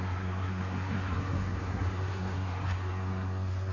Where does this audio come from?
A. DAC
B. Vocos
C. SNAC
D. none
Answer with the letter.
C